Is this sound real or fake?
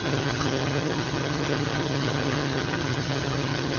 fake